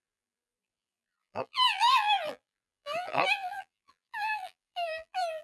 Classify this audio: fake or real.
fake